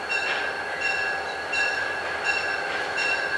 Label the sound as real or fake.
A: real